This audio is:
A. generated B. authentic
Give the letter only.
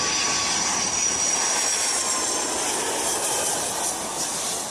B